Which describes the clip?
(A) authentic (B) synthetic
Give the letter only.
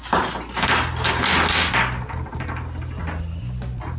A